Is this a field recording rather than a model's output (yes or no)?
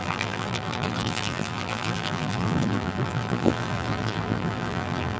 no